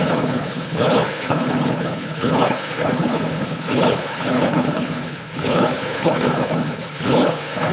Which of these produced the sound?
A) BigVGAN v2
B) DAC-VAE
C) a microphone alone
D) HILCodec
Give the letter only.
D